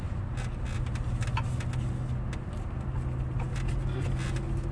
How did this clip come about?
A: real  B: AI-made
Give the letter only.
A